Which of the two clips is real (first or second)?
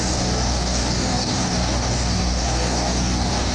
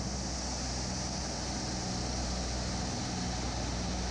second